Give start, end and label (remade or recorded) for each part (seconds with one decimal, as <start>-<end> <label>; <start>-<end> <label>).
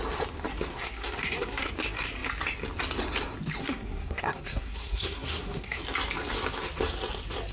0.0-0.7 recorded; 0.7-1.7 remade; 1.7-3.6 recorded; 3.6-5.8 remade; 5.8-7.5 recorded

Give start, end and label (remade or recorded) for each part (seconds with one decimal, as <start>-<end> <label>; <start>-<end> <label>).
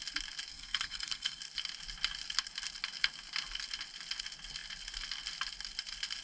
0.0-0.5 recorded; 0.5-1.4 remade; 1.4-6.2 recorded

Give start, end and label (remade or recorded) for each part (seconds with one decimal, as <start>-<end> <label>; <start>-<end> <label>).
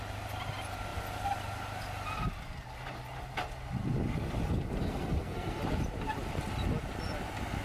0.0-4.8 recorded; 4.8-5.6 remade; 5.6-7.6 recorded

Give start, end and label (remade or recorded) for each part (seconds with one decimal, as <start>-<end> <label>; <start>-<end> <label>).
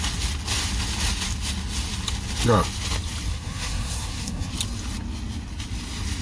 0.0-3.3 recorded; 3.3-4.5 remade; 4.5-6.2 recorded